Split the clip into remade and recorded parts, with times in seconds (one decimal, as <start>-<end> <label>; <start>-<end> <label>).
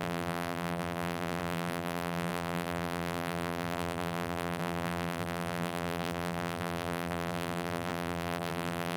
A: 0.0-9.0 remade